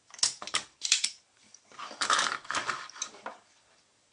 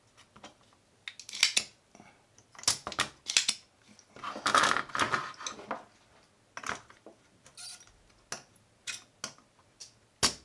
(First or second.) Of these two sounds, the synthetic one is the first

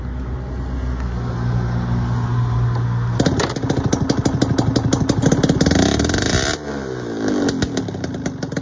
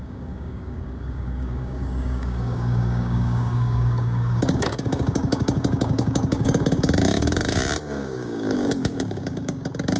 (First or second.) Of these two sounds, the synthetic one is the second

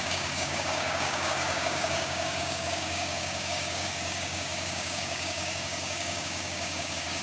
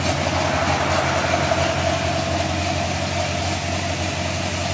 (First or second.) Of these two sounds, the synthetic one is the first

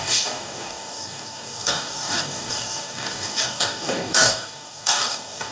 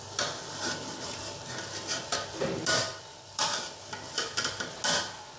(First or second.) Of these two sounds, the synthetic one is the first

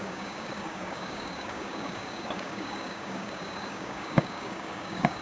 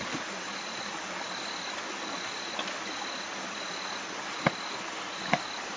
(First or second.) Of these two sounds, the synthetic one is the first